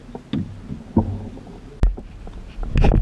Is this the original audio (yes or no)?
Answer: yes